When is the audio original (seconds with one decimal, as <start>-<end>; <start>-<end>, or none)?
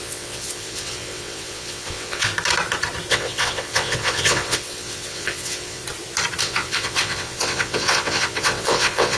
2.3-3.1; 5.8-6.4